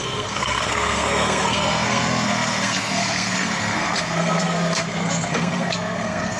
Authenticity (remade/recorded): remade